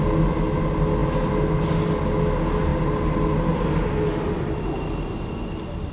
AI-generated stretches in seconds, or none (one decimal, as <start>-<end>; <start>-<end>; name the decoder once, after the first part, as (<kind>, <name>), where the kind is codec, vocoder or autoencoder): none